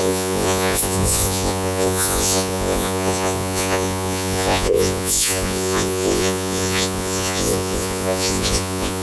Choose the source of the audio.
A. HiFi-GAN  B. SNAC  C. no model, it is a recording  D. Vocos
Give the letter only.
D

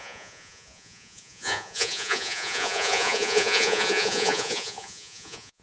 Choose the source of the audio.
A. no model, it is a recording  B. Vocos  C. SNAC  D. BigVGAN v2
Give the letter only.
B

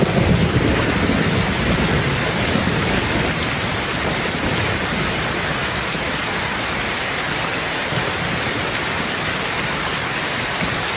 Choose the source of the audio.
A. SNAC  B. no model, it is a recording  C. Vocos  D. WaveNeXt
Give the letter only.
B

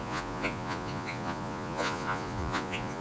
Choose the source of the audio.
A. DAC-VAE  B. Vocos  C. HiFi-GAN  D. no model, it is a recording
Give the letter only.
B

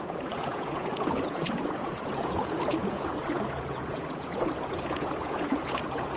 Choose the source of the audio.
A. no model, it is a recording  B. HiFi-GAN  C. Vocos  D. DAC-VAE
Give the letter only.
C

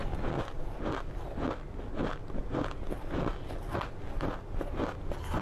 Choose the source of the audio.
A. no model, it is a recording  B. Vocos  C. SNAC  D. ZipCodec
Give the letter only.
A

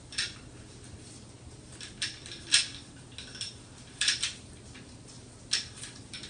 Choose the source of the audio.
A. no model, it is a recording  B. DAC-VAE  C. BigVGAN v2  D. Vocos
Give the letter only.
A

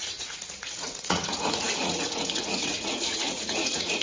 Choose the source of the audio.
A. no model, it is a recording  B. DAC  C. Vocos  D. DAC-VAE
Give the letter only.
C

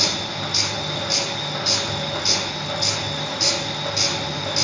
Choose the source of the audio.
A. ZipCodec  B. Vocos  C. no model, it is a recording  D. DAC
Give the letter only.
C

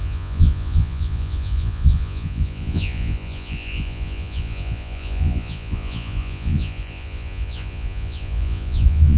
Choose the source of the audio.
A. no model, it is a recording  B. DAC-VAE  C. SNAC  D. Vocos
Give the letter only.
D